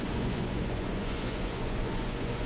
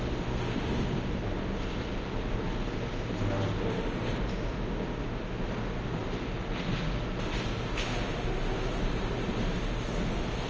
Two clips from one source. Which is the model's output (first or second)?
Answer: first